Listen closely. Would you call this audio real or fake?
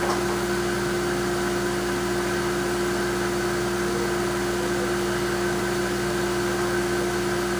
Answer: real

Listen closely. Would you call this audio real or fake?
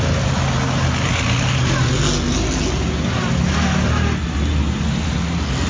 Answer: real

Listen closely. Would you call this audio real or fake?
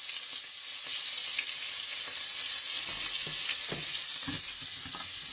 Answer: real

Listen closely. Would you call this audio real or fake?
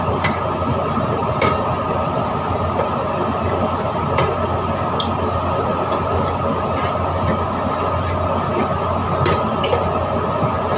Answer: real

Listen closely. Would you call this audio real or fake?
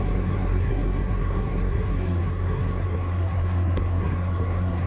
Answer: fake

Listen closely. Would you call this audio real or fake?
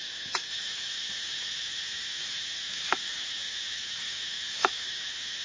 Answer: fake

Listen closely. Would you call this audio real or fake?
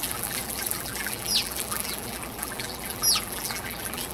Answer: fake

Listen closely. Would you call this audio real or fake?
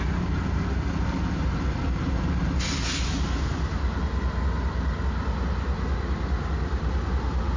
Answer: real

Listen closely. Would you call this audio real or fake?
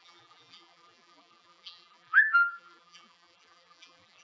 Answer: fake